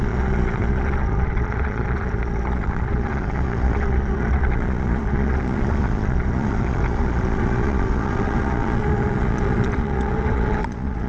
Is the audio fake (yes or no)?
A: yes